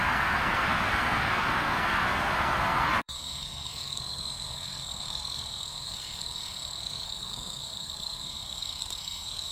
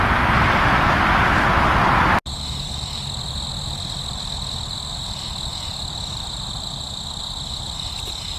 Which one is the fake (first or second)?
first